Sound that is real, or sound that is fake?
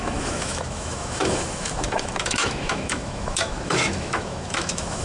fake